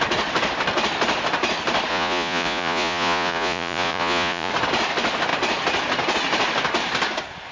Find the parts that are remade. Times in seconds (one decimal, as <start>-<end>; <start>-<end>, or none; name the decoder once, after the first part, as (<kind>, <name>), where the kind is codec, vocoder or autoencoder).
1.9-4.5 (vocoder, Vocos)